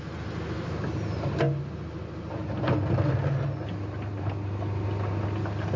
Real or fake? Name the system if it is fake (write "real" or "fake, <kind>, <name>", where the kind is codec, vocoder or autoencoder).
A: real